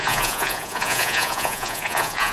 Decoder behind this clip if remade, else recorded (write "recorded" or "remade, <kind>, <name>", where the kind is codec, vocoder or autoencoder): remade, vocoder, Vocos